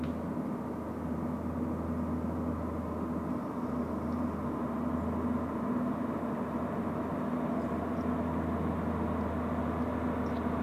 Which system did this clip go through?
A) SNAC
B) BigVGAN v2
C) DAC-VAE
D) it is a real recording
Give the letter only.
D